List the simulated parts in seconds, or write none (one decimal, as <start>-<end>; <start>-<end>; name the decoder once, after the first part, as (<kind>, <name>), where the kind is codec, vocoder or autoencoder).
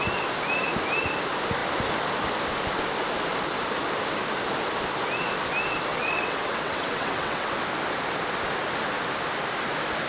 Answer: 5.9-7.5 (vocoder, WaveNeXt)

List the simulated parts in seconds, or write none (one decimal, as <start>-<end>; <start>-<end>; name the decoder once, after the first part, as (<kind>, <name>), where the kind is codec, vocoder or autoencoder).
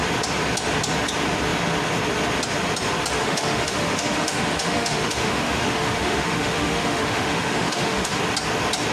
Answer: 3.2-8.2 (autoencoder, DAC-VAE)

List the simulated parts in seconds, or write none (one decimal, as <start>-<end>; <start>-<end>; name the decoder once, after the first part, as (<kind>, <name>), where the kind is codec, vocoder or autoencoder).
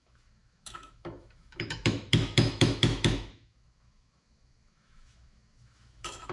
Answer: 0.0-6.3 (autoencoder, DAC-VAE)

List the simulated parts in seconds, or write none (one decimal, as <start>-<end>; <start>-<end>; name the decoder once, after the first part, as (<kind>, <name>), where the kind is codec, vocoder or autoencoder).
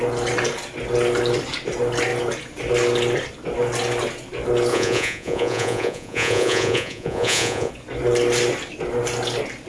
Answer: 4.7-7.7 (vocoder, Vocos)